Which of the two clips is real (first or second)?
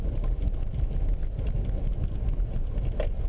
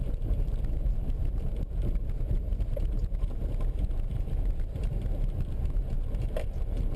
first